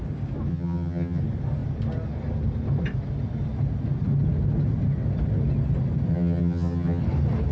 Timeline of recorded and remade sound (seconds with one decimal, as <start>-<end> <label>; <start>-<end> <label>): 0.0-0.5 recorded; 0.5-1.2 remade; 1.2-6.1 recorded; 6.1-7.0 remade; 7.0-7.5 recorded